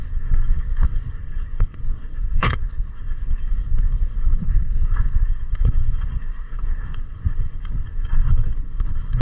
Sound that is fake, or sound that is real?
fake